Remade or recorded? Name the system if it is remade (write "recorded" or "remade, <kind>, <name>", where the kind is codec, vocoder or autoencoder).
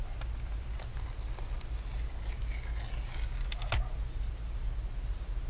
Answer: recorded